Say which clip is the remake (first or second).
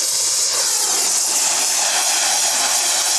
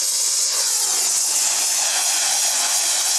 second